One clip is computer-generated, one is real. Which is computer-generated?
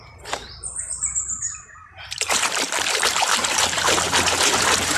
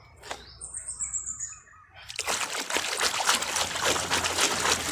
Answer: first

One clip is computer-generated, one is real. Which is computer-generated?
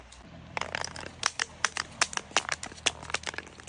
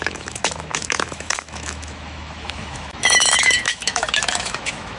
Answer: second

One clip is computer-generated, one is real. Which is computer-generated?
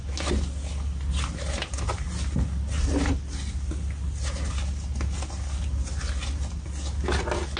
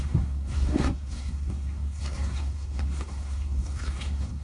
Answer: second